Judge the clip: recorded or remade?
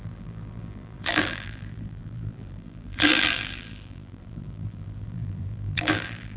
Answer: remade